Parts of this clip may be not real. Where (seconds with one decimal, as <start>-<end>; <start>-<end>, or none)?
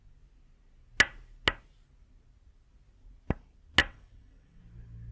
3.8-4.6